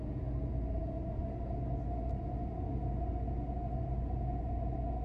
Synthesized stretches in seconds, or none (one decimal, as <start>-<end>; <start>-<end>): none